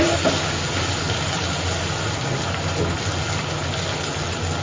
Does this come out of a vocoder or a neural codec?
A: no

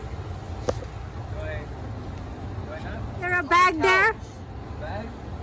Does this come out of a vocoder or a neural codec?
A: no